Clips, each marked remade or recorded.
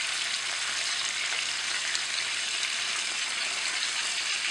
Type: recorded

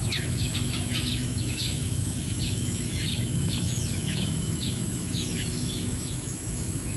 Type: remade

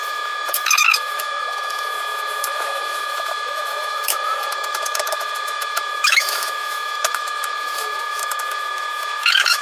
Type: remade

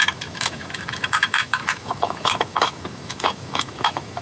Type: remade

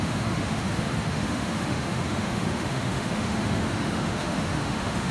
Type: remade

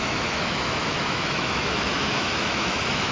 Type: remade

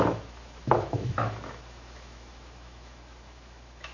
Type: remade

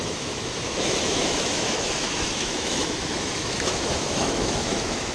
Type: remade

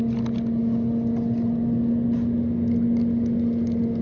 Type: recorded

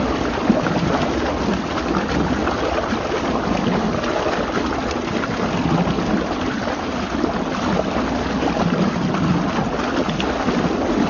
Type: recorded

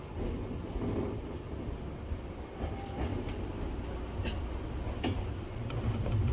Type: recorded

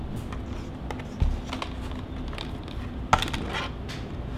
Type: recorded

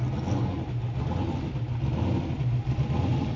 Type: recorded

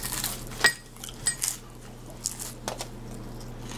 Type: recorded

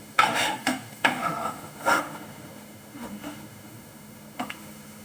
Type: remade